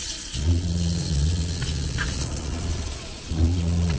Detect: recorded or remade remade